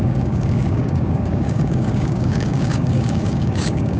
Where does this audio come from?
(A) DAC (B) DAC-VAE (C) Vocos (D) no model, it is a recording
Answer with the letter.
A